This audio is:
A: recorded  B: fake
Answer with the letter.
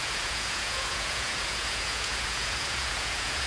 B